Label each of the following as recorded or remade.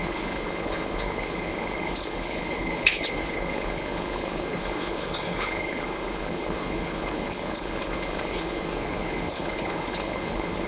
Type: remade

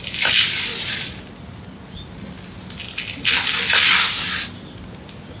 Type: recorded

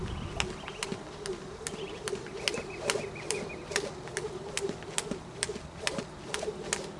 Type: recorded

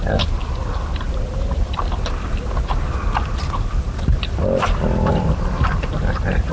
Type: recorded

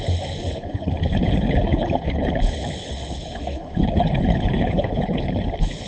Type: remade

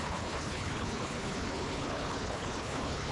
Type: remade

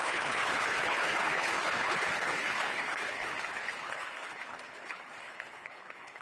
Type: remade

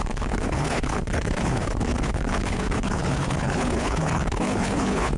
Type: remade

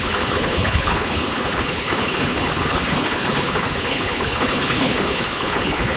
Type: remade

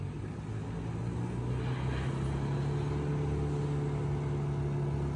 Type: recorded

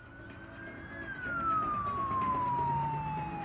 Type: recorded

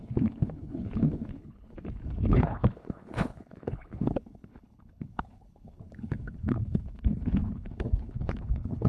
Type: remade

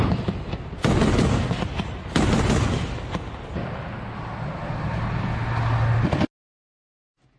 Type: recorded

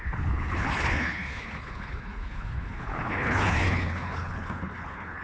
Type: remade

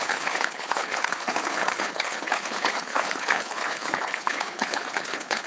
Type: remade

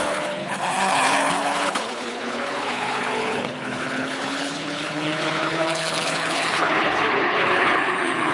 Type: remade